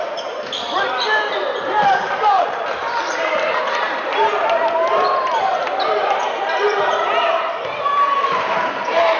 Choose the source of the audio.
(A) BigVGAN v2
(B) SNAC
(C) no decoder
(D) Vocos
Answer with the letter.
A